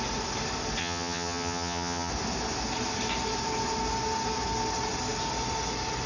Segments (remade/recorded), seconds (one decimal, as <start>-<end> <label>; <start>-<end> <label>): 0.0-0.8 recorded; 0.8-2.1 remade; 2.1-6.1 recorded